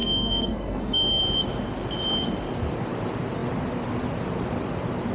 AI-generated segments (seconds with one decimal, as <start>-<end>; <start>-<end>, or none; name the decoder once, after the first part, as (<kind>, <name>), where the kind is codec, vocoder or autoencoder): 0.0-1.2 (codec, SNAC)